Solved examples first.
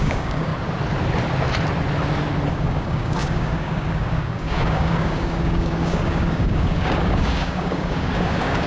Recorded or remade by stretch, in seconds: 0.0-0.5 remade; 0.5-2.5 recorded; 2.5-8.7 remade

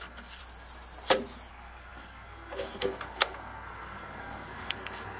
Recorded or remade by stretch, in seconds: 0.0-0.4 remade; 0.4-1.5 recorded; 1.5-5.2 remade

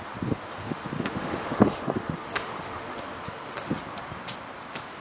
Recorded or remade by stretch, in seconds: 0.0-0.6 recorded; 0.6-3.6 remade; 3.6-5.0 recorded

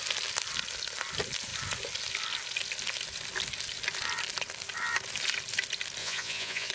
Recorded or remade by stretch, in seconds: 0.0-6.0 recorded; 6.0-6.7 remade

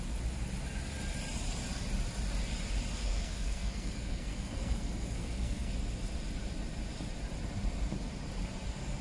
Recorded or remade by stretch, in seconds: 0.0-3.0 recorded; 3.0-5.7 remade; 5.7-9.0 recorded

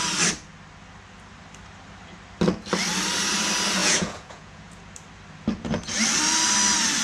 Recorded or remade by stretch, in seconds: 0.0-3.8 recorded; 3.8-4.8 remade; 4.8-7.0 recorded

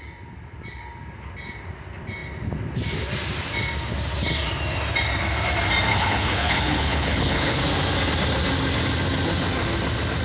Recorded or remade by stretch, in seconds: 0.0-5.9 recorded; 5.9-7.6 remade; 7.6-10.2 recorded